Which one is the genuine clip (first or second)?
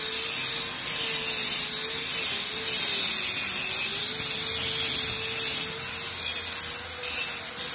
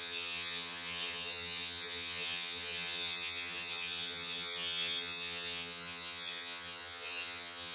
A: first